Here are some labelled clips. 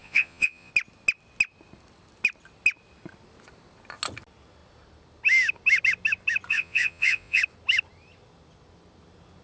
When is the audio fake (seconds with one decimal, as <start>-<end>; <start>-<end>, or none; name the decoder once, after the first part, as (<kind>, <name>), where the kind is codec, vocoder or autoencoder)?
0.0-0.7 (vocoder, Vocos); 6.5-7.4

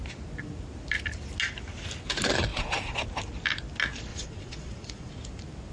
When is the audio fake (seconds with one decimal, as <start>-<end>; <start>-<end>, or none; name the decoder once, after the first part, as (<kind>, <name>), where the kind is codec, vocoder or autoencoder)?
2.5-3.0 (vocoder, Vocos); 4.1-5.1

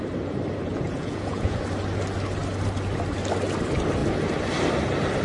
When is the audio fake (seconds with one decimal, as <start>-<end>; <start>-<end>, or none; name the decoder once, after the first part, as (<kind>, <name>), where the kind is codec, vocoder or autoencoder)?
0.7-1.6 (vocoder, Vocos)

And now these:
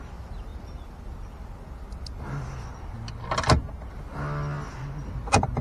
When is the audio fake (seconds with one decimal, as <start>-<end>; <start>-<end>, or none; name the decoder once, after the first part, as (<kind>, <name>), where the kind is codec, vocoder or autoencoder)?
none

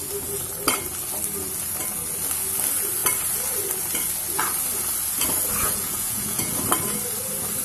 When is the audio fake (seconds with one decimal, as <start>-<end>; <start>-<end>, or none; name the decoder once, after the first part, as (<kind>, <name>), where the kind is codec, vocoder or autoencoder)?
5.6-6.5 (vocoder, Vocos)

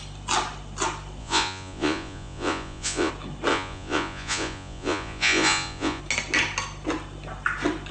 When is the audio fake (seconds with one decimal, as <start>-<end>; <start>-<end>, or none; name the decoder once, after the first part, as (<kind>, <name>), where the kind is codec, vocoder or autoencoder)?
1.2-3.1 (vocoder, Vocos); 3.5-6.0

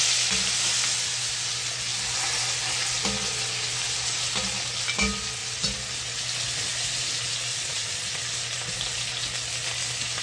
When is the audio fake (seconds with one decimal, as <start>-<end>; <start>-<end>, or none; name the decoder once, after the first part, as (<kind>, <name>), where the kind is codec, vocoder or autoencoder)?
7.5-8.2 (vocoder, Vocos)

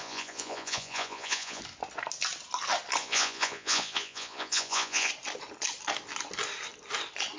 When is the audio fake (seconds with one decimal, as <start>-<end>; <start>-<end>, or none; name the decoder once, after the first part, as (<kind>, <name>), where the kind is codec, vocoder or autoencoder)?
0.0-1.6 (vocoder, Vocos); 3.0-5.1